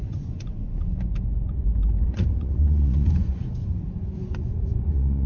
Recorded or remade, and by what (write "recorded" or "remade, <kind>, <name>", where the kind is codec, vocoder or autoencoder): remade, vocoder, Vocos